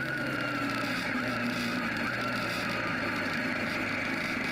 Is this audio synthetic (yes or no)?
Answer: yes